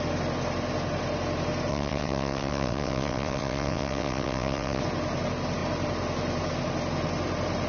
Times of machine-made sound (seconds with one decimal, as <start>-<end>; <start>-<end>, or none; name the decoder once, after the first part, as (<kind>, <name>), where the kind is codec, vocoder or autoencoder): 1.7-4.8 (vocoder, WaveNeXt)